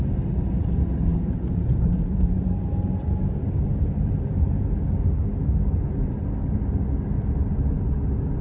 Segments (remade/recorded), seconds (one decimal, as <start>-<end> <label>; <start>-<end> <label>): 0.0-1.1 recorded; 1.1-3.0 remade; 3.0-8.4 recorded

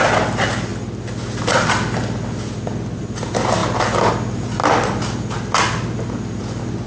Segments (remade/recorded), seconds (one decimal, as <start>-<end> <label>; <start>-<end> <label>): 0.0-6.9 recorded

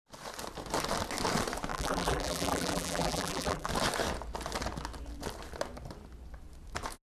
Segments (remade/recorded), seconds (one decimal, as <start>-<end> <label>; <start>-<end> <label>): 0.0-1.7 recorded; 1.7-3.7 remade; 3.7-7.0 recorded

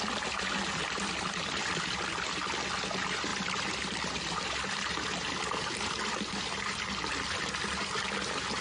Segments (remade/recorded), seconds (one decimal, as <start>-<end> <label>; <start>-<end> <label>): 0.0-0.8 recorded; 0.8-1.4 remade; 1.4-3.3 recorded; 3.3-7.5 remade; 7.5-8.6 recorded

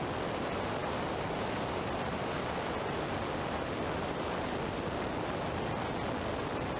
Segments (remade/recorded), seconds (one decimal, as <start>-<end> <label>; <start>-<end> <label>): 0.0-0.8 recorded; 0.8-4.9 remade; 4.9-6.8 recorded

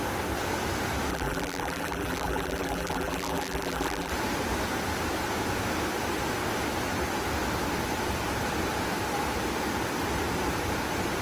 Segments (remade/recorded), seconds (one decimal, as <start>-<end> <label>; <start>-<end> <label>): 0.0-1.1 recorded; 1.1-4.1 remade; 4.1-11.2 recorded

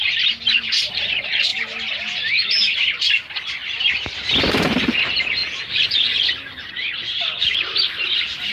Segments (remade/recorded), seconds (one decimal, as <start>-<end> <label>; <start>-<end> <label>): 0.0-5.4 remade; 5.4-6.7 recorded; 6.7-8.5 remade